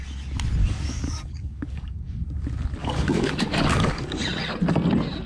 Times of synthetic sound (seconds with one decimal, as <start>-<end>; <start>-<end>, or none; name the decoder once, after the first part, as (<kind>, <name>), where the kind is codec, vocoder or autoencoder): 0.6-2.1 (codec, DAC); 2.8-4.2